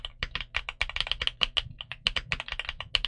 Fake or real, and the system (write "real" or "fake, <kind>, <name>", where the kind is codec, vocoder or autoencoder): real